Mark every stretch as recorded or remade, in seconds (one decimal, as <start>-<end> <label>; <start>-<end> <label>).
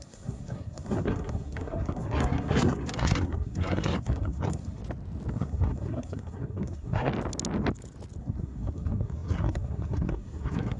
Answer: 0.0-4.8 remade; 4.8-5.3 recorded; 5.3-7.1 remade; 7.1-8.2 recorded; 8.2-10.8 remade